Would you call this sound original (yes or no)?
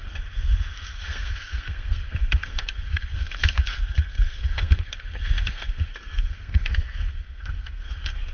no